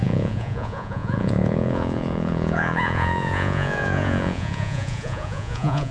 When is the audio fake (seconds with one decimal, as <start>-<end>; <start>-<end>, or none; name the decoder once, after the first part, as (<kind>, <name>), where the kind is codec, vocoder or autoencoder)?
0.0-5.9 (vocoder, Vocos)